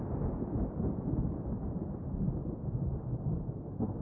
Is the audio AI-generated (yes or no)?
no